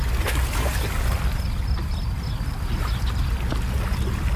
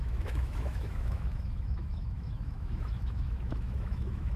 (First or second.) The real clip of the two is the first